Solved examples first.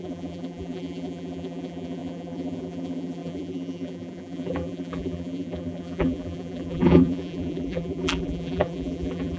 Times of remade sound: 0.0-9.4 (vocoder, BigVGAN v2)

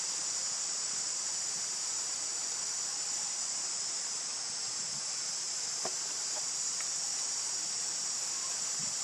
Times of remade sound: 0.4-1.3 (vocoder, BigVGAN v2); 2.9-4.1

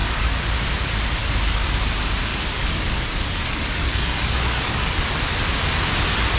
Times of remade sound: 0.0-0.5 (codec, DAC); 1.2-1.8; 2.3-5.0

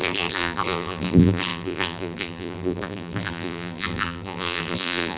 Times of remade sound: 0.0-5.2 (vocoder, BigVGAN v2)

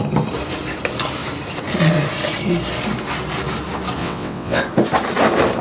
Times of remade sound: 4.0-4.6 (vocoder, WaveNeXt)

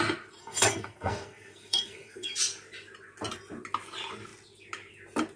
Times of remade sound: 0.4-2.3 (codec, SNAC)

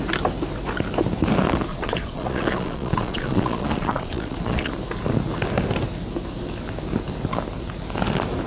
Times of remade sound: 1.7-4.7 (vocoder, Vocos)

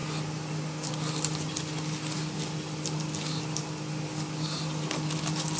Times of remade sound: none